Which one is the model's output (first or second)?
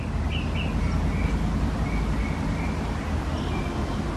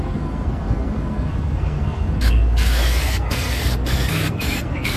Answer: second